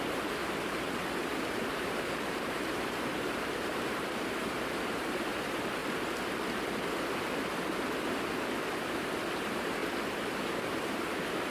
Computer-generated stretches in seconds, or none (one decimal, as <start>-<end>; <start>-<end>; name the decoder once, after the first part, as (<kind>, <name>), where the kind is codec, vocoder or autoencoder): 0.0-0.4 (vocoder, BigVGAN v2); 1.7-5.8; 9.4-9.8; 10.4-11.5